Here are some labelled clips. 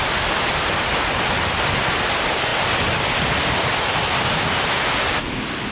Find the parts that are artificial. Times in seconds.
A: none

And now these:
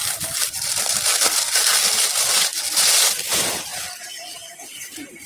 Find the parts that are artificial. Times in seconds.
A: 0.0-2.1 (vocoder, BigVGAN v2); 3.7-4.6

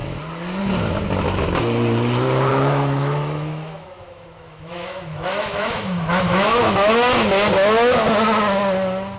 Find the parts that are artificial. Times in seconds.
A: 2.5-6.9 (autoencoder, DAC-VAE)

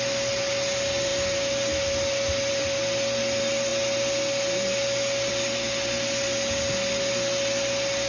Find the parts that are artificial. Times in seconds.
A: none

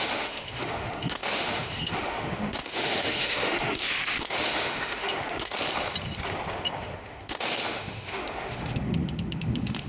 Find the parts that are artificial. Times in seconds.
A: 0.0-5.5 (autoencoder, DAC-VAE); 6.8-9.9

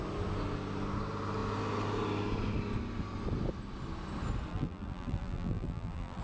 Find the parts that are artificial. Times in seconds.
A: 4.5-6.2 (vocoder, BigVGAN v2)

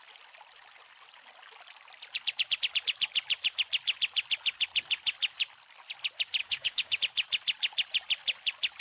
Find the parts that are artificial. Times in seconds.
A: 6.4-7.0 (codec, DAC)

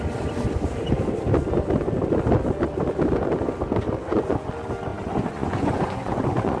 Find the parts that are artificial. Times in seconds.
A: 4.0-4.5 (vocoder, Vocos); 4.9-6.6